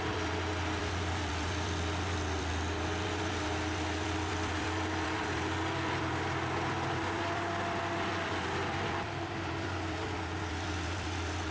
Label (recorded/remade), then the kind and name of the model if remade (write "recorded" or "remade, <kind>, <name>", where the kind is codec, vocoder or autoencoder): remade, vocoder, BigVGAN v2